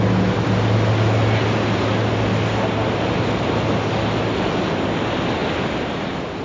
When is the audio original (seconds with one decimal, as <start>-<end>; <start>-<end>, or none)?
0.0-6.4